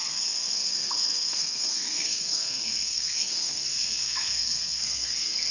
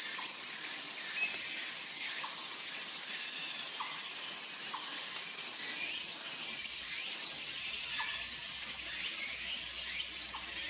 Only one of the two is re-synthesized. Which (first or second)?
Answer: first